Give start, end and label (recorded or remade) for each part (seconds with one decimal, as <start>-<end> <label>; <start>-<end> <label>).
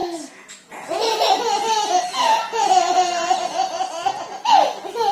0.0-0.7 remade; 0.7-2.1 recorded; 2.1-4.2 remade; 4.2-5.1 recorded